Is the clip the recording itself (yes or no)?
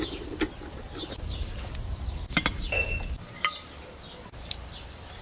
yes